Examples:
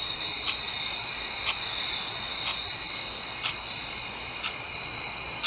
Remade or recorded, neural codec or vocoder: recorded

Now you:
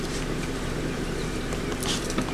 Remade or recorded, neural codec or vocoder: remade, vocoder, BigVGAN v2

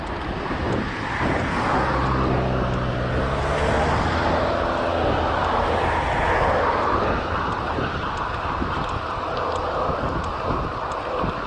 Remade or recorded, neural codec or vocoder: recorded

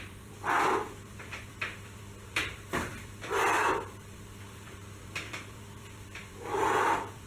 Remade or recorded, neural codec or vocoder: remade, vocoder, BigVGAN v2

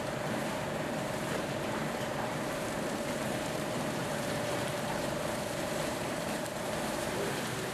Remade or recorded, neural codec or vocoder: remade, vocoder, BigVGAN v2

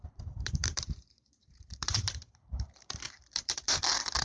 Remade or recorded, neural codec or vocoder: remade, vocoder, BigVGAN v2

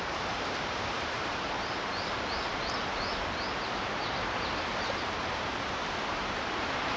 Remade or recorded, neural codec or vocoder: remade, vocoder, BigVGAN v2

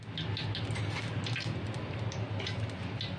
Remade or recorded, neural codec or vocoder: recorded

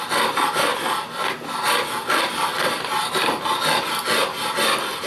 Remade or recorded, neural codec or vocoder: recorded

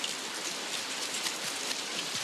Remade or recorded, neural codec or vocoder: remade, vocoder, BigVGAN v2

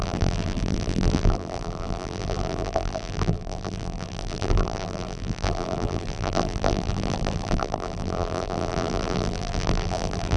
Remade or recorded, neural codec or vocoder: remade, vocoder, BigVGAN v2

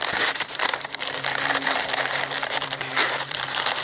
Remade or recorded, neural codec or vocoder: remade, vocoder, BigVGAN v2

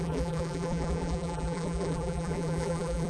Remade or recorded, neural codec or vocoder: remade, vocoder, BigVGAN v2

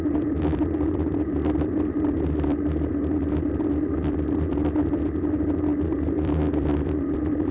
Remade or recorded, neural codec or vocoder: remade, vocoder, BigVGAN v2